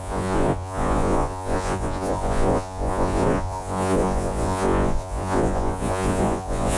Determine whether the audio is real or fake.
fake